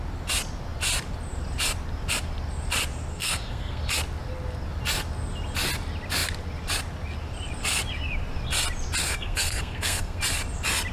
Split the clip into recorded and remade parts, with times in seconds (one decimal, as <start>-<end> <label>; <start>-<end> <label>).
0.0-3.1 recorded; 3.1-3.8 remade; 3.8-9.0 recorded; 9.0-10.2 remade; 10.2-10.9 recorded